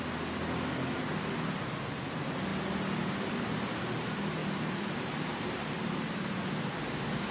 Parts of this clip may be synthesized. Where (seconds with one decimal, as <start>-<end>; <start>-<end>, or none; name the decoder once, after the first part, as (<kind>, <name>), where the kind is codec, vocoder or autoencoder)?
4.4-5.9 (vocoder, BigVGAN v2)